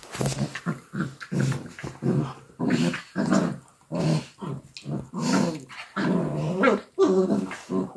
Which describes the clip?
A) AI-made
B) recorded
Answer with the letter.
B